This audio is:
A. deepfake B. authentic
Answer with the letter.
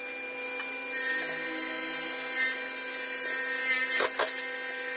B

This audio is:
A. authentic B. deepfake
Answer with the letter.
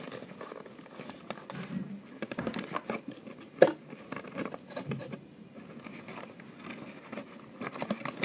A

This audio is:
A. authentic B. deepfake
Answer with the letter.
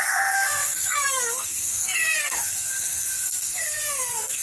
B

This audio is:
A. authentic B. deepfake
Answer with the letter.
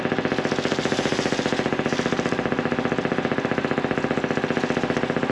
A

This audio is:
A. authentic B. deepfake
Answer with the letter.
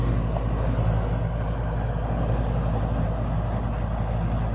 A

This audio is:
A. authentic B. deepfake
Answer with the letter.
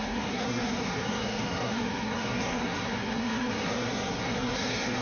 B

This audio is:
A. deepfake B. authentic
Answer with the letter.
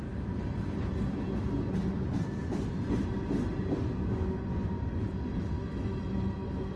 B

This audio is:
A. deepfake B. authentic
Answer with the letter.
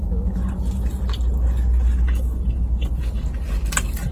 B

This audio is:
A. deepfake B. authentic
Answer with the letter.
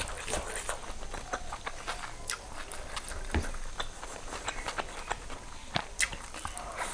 B